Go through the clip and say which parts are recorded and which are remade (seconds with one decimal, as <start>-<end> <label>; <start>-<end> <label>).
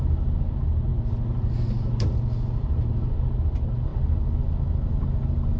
0.0-5.6 recorded